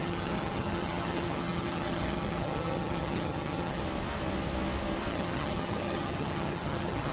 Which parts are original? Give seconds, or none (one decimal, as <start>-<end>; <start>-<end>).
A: 3.8-5.1